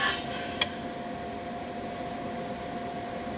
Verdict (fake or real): real